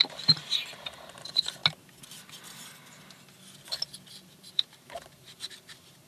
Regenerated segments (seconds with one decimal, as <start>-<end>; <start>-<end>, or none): 0.0-1.6; 4.0-6.1